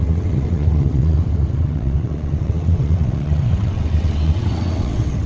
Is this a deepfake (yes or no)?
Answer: yes